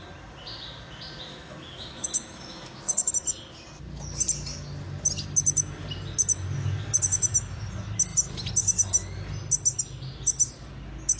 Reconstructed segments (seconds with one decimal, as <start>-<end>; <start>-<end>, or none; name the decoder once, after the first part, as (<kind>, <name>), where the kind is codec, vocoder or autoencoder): 1.3-3.1 (autoencoder, DAC-VAE)